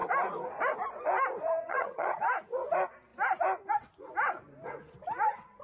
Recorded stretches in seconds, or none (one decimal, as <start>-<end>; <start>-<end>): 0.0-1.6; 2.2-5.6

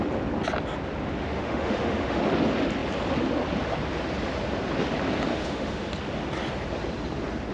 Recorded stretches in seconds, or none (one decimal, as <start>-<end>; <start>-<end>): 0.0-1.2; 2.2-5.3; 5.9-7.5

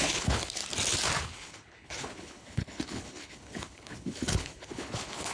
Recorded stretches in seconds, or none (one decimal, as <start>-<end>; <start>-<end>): 0.6-1.2